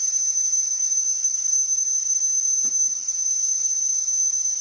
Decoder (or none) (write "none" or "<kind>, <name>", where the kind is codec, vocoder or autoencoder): none